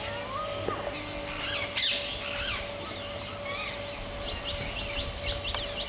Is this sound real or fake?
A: real